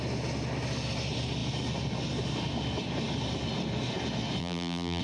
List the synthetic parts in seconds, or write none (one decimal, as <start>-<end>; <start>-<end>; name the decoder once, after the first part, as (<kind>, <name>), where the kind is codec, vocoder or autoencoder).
4.4-5.0 (vocoder, BigVGAN v2)